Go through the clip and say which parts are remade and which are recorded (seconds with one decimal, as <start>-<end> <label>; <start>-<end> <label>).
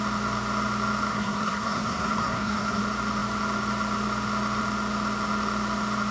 0.0-1.1 recorded; 1.1-2.8 remade; 2.8-6.1 recorded